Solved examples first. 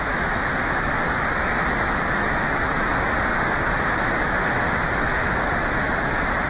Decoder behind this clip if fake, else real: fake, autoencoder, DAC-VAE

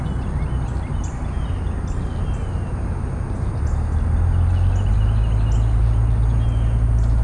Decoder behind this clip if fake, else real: real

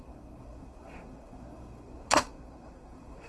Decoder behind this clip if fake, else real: fake, codec, SNAC